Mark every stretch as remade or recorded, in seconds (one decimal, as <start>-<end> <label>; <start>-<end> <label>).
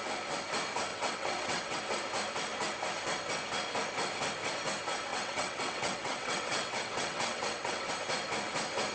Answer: 0.0-0.9 recorded; 0.9-1.8 remade; 1.8-5.1 recorded; 5.1-7.9 remade; 7.9-8.9 recorded